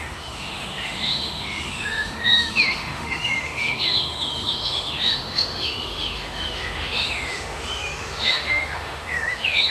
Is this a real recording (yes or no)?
no